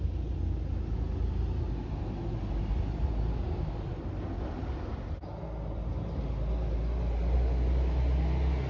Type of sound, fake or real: real